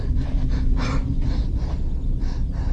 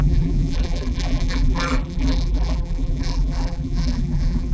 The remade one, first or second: second